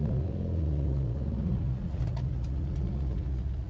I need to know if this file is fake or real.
fake